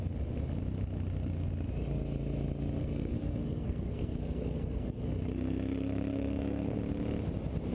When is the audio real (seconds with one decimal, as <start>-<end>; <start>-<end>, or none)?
0.0-2.8; 6.8-7.7